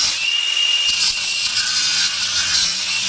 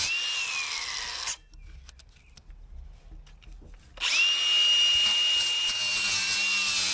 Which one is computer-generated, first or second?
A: first